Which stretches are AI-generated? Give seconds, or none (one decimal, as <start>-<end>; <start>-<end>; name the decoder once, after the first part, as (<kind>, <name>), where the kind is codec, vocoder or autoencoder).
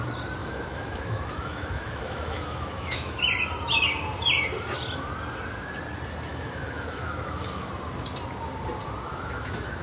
0.4-3.2 (autoencoder, DAC-VAE); 6.3-7.7; 9.1-9.8